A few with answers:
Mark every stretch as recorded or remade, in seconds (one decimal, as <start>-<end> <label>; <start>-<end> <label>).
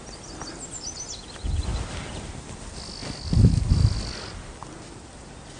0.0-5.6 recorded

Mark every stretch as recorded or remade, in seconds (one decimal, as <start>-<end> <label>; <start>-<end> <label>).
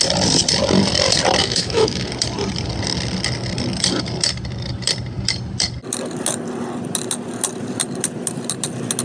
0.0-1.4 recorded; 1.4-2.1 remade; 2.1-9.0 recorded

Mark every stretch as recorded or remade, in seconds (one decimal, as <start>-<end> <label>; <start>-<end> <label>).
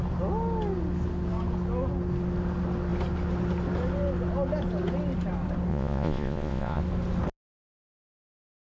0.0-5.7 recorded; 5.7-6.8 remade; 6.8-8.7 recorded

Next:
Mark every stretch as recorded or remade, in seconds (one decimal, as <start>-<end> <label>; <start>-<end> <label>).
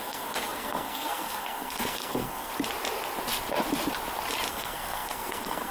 0.0-2.5 remade; 2.5-4.5 recorded; 4.5-5.7 remade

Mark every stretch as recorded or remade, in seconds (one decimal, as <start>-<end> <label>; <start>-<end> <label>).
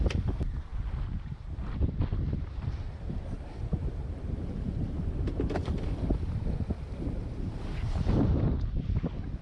0.0-9.4 recorded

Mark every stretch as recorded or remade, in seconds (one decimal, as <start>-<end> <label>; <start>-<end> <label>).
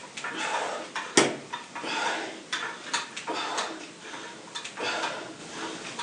0.0-6.0 recorded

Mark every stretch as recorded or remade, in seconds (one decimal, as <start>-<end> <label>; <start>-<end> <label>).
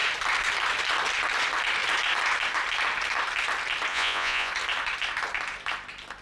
0.0-3.9 recorded; 3.9-4.5 remade; 4.5-6.2 recorded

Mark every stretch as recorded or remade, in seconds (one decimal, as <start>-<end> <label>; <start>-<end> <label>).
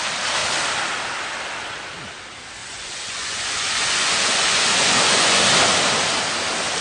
0.0-2.6 recorded; 2.6-5.4 remade; 5.4-6.8 recorded